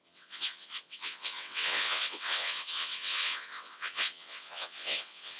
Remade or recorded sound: remade